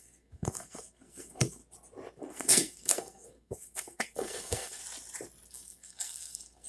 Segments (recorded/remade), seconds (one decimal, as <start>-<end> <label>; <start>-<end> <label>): 0.0-1.6 remade; 1.6-2.2 recorded; 2.2-4.8 remade; 4.8-5.5 recorded; 5.5-6.7 remade